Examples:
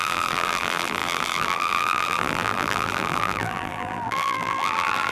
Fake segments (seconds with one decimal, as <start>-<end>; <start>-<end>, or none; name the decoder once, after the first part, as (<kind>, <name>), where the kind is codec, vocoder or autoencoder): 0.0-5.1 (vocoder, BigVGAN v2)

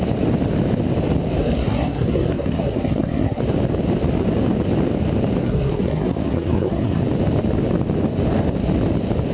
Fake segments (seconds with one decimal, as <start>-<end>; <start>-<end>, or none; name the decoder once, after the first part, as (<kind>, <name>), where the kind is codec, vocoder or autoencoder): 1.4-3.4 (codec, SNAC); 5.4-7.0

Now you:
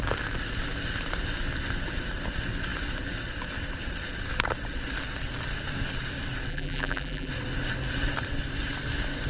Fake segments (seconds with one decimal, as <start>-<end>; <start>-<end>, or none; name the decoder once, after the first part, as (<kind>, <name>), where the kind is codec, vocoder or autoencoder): 6.5-7.3 (vocoder, BigVGAN v2)

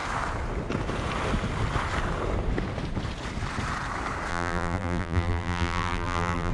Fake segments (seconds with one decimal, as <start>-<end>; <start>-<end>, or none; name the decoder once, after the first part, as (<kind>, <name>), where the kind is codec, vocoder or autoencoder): 4.3-6.5 (vocoder, BigVGAN v2)

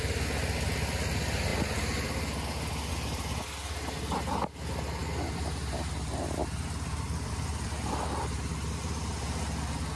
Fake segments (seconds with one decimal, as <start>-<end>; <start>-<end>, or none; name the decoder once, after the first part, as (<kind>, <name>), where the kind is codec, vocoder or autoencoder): 5.0-9.1 (vocoder, BigVGAN v2)

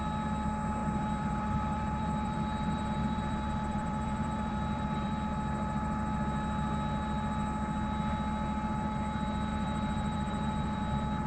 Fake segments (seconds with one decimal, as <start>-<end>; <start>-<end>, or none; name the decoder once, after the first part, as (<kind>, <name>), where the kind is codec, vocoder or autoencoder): 0.8-5.1 (vocoder, BigVGAN v2); 9.5-10.8

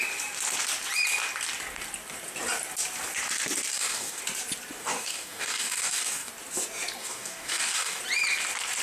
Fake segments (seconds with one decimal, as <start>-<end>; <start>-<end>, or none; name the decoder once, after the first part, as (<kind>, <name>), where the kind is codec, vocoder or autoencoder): 3.7-4.2 (codec, DAC); 4.8-6.3; 7.0-8.0

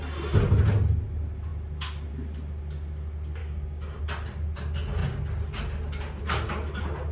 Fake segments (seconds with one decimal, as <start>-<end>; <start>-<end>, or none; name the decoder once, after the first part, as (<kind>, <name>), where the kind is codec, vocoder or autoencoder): 3.4-4.0 (codec, DAC)